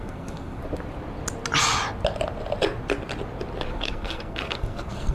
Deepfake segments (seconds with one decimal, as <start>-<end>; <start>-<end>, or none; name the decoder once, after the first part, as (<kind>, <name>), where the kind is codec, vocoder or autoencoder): 0.0-0.6 (codec, SNAC); 3.7-5.1